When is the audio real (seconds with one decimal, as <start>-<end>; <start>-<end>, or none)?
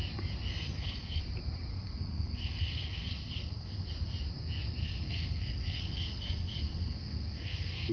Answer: 0.0-0.5; 1.2-1.7; 3.9-4.8